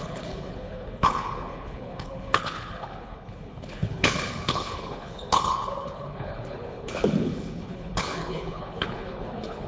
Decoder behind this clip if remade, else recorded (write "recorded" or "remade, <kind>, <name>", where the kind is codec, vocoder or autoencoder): remade, codec, HILCodec